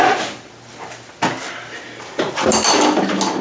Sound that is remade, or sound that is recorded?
recorded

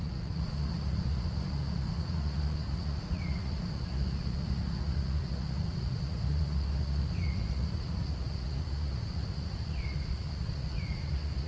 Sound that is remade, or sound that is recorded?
remade